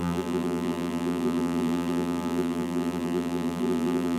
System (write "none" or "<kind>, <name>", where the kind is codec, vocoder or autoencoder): vocoder, BigVGAN v2